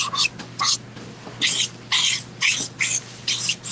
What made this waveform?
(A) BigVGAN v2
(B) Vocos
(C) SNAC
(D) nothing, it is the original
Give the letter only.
D